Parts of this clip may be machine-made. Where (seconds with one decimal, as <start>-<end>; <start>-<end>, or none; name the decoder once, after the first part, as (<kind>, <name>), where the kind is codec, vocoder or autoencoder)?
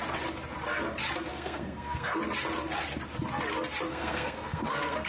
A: 1.3-2.2 (codec, SNAC); 3.9-5.1